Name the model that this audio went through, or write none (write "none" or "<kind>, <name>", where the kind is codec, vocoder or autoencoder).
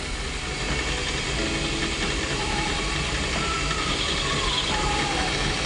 none